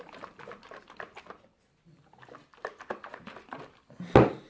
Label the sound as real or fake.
real